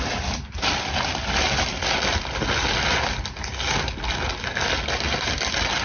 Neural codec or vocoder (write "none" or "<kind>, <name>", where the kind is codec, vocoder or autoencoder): none